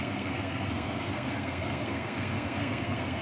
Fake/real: fake